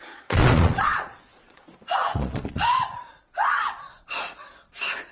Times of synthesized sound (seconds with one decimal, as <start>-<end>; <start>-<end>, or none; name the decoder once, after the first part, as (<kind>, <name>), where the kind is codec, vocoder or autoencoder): 0.0-5.1 (vocoder, Vocos)